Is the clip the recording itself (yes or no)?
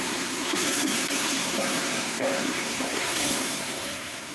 no